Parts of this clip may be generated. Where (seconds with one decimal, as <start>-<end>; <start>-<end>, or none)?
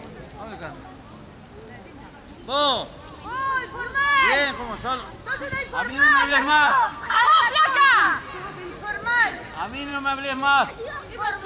5.9-7.4